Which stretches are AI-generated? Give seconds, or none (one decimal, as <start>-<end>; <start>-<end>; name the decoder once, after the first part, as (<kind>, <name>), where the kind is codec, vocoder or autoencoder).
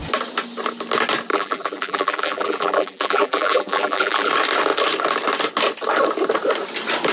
1.3-4.3 (vocoder, BigVGAN v2)